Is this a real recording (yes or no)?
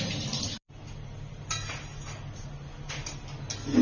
yes